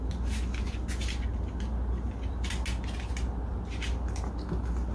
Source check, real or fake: real